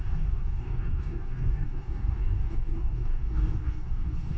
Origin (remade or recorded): remade